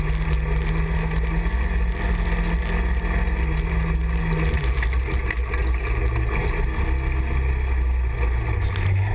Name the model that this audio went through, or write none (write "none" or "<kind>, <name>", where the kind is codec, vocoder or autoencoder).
none